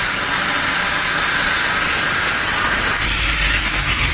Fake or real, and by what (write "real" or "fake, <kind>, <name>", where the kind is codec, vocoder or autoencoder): real